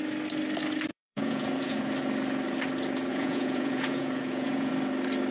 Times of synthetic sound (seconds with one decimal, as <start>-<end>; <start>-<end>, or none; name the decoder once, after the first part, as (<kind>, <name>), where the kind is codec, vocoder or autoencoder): 0.9-1.8 (vocoder, Vocos); 3.1-4.7